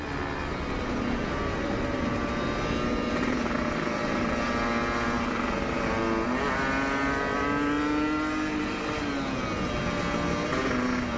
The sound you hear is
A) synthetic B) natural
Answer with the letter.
B